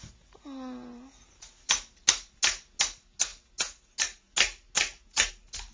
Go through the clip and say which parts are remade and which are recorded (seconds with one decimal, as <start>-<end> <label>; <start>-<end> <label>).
0.0-5.7 recorded